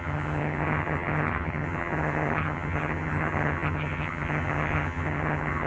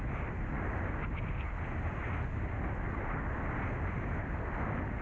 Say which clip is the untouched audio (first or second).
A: second